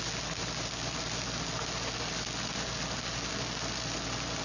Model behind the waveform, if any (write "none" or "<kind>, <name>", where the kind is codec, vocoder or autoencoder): none